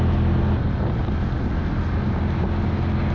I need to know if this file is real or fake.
real